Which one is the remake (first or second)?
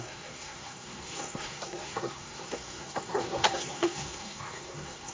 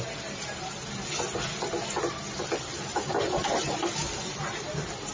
first